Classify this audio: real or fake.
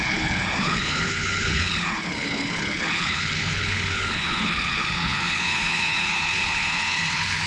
fake